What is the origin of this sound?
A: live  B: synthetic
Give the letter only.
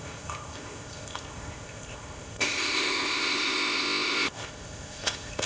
B